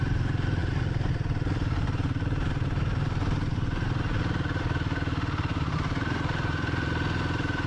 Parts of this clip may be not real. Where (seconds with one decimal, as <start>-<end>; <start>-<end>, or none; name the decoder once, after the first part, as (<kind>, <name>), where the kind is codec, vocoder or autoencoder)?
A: 0.6-4.0 (vocoder, BigVGAN v2); 5.5-6.9